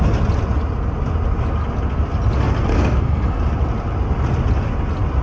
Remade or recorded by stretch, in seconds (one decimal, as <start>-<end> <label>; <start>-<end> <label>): 0.0-2.7 recorded; 2.7-3.4 remade; 3.4-5.2 recorded